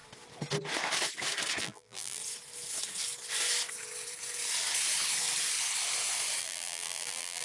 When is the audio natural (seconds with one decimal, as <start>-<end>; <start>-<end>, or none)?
0.0-1.6; 2.2-6.4